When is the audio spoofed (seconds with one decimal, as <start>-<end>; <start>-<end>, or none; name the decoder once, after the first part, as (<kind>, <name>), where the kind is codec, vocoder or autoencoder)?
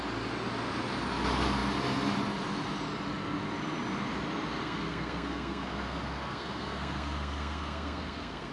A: 4.6-8.5 (codec, SNAC)